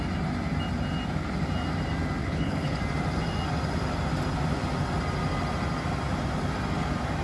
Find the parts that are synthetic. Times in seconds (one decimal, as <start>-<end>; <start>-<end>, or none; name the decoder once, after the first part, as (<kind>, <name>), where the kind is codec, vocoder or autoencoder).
2.2-2.8 (codec, HILCodec)